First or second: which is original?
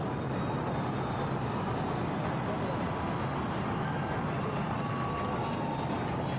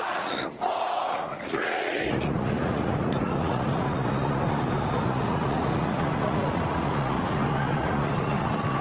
first